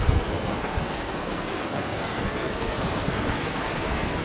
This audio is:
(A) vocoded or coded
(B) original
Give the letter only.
A